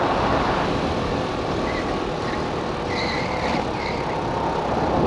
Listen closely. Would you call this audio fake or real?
real